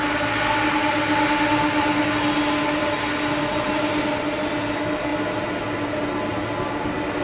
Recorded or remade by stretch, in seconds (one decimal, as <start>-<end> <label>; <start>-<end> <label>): 0.0-7.2 recorded